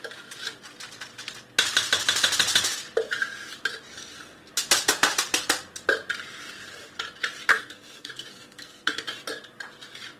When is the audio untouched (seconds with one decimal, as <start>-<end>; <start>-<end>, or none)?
0.0-3.9; 4.5-7.5; 9.0-10.2